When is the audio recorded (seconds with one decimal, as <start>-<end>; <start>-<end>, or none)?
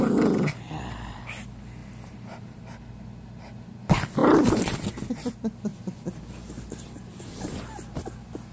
0.0-8.5